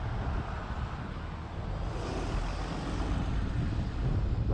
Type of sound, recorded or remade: recorded